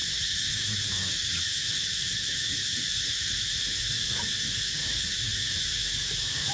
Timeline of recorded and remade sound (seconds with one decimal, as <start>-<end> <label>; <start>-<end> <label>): 0.0-6.5 remade